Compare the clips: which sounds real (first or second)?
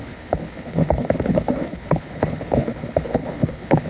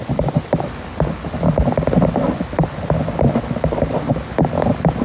second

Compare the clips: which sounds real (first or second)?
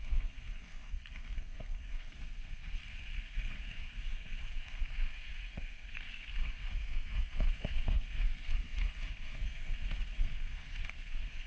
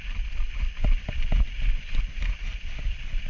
second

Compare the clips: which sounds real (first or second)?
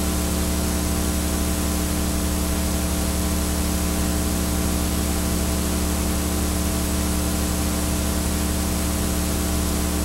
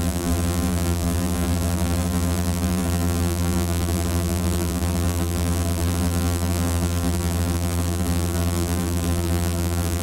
first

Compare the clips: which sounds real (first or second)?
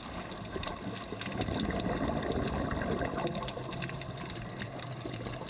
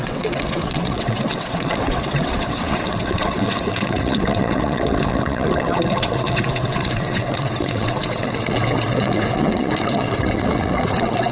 first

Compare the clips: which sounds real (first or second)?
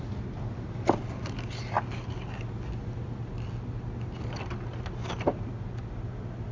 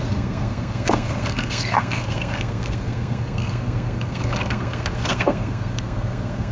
first